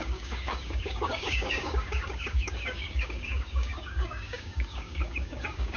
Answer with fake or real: fake